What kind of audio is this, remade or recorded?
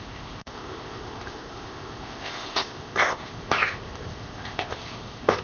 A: remade